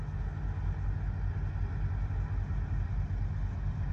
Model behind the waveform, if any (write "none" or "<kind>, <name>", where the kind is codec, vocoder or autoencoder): none